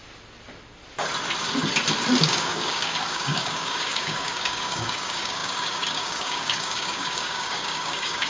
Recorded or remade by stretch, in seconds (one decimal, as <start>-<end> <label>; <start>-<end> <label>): 0.0-2.2 recorded; 2.2-8.3 remade